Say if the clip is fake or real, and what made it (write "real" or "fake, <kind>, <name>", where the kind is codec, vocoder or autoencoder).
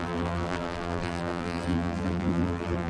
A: fake, vocoder, BigVGAN v2